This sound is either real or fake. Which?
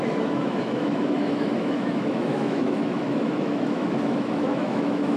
fake